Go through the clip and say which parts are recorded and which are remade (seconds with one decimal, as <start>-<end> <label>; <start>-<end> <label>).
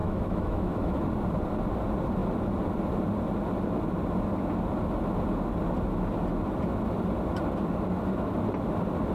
0.0-1.0 remade; 1.0-9.1 recorded